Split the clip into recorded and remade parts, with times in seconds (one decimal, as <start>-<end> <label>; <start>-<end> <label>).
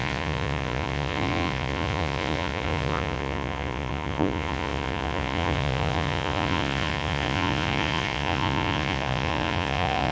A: 0.0-10.1 remade